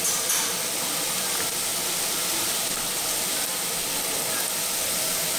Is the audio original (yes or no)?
yes